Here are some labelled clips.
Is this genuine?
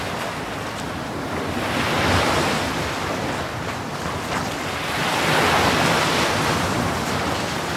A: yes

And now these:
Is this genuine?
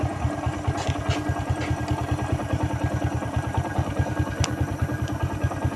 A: yes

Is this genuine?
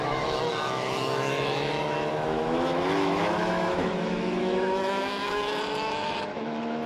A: no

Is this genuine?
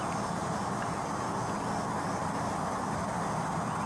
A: yes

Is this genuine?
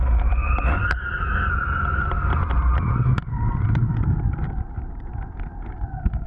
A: yes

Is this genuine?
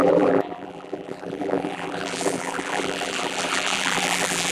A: no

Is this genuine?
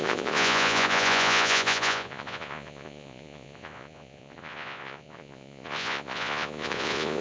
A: no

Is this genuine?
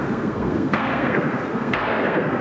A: no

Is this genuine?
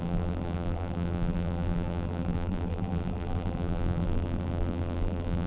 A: no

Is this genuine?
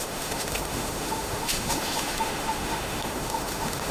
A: no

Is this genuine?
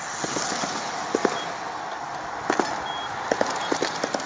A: yes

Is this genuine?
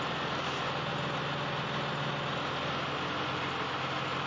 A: yes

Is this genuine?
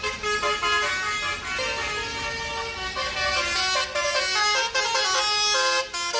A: yes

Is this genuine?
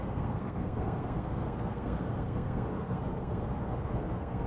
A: no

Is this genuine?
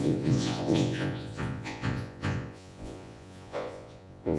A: no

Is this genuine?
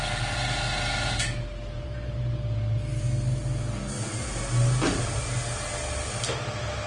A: yes